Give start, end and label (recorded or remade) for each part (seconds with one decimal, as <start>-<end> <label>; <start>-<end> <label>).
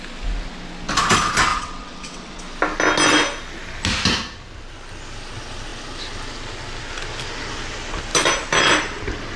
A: 0.0-1.5 recorded; 1.5-2.4 remade; 2.4-9.4 recorded